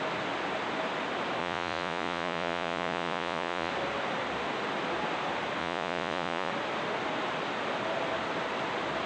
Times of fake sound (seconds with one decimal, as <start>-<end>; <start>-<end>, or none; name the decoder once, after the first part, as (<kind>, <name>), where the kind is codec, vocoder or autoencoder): 1.4-3.7 (vocoder, Vocos); 5.6-6.5